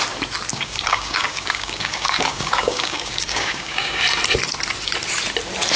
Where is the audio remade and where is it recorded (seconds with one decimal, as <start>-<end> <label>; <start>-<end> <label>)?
0.0-0.5 recorded; 0.5-4.0 remade; 4.0-5.8 recorded